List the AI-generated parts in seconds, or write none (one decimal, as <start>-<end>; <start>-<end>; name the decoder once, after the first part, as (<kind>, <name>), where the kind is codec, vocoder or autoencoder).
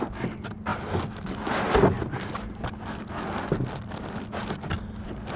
none